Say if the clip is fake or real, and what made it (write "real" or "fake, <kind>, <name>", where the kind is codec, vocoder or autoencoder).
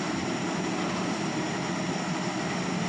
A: real